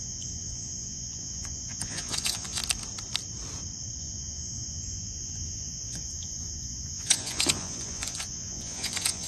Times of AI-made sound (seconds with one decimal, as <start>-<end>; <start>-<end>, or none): 0.0-2.6; 4.0-9.3